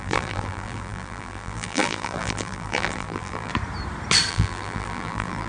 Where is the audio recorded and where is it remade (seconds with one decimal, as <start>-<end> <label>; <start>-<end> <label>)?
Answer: 0.0-3.5 remade; 3.5-4.3 recorded; 4.3-5.5 remade